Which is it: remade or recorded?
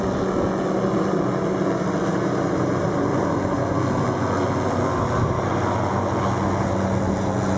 recorded